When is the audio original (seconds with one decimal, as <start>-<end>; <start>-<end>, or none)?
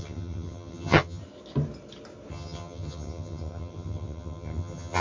1.2-2.3